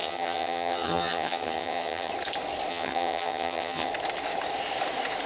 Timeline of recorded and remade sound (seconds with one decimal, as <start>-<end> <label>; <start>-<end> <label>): 0.0-2.1 remade; 2.1-2.7 recorded; 2.7-3.9 remade; 3.9-5.3 recorded